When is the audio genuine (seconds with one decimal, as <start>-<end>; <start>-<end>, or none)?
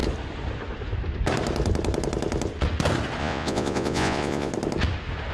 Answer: 0.0-3.2; 4.5-5.3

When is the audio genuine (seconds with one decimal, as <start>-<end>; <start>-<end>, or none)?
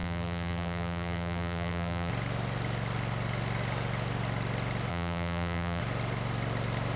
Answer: 2.1-4.9; 5.8-7.0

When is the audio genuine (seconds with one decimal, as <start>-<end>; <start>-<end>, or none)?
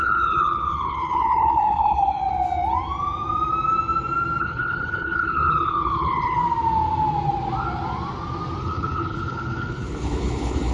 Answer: 2.2-4.4; 6.4-8.6